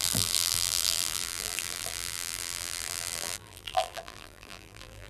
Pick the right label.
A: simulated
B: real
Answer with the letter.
A